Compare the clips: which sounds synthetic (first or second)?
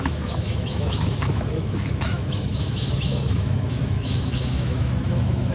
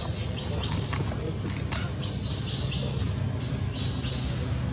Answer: first